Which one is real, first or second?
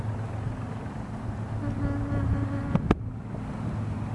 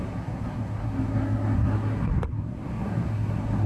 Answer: first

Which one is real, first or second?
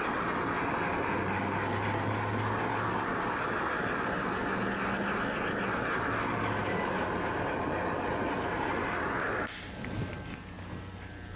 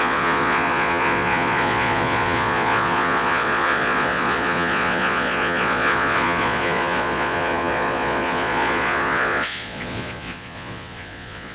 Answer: first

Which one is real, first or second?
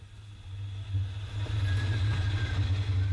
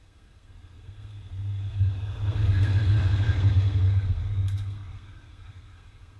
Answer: first